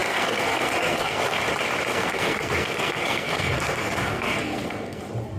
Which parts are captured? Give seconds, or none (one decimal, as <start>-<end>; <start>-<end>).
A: 1.4-1.9; 5.0-5.4